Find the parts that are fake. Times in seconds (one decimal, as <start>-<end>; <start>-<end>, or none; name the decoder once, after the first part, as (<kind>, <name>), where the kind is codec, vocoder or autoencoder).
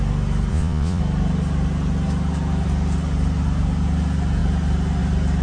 0.5-1.0 (vocoder, Vocos)